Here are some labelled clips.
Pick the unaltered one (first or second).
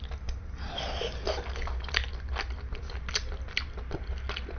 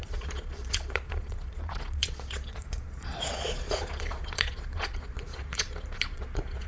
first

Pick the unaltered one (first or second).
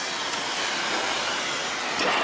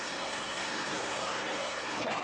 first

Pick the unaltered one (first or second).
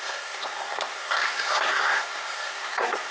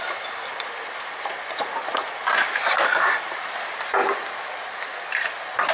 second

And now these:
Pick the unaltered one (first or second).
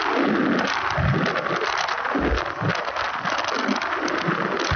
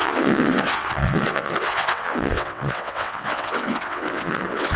first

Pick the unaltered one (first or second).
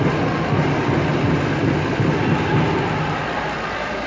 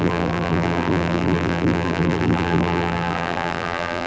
first